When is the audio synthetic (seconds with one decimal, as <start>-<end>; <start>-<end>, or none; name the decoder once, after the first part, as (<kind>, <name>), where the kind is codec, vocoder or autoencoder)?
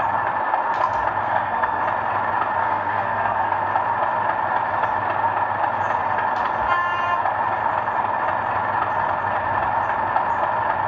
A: 1.2-1.8 (codec, SNAC); 2.6-3.6